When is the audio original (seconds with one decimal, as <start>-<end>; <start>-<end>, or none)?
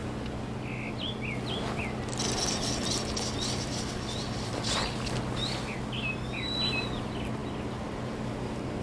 0.0-8.8